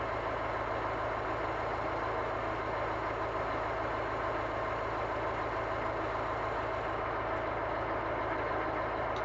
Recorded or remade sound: recorded